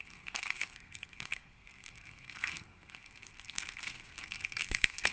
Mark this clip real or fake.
fake